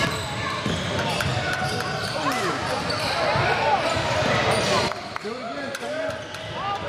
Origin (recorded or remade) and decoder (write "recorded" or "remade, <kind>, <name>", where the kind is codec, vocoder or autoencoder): recorded